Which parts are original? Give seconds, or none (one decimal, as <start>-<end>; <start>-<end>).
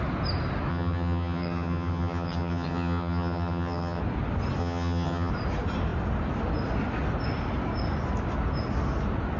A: 0.0-0.7; 4.0-4.6; 5.3-9.4